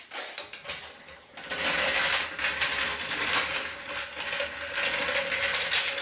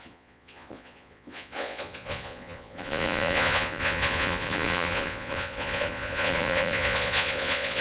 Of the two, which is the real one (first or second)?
first